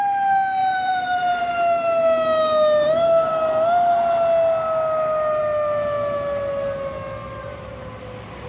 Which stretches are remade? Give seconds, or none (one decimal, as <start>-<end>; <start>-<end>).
0.6-1.4; 7.2-7.7